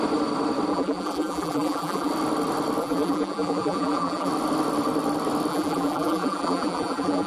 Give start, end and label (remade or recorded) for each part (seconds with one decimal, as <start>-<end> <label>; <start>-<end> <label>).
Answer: 0.0-0.7 recorded; 0.7-2.1 remade; 2.1-2.8 recorded; 2.8-4.3 remade; 4.3-5.5 recorded; 5.5-7.3 remade